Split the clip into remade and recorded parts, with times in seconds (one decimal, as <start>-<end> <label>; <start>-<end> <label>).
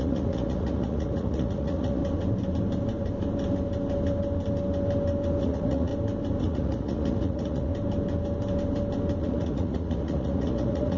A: 0.0-2.0 remade; 2.0-5.4 recorded; 5.4-5.9 remade; 5.9-6.4 recorded; 6.4-7.7 remade; 7.7-9.2 recorded; 9.2-11.0 remade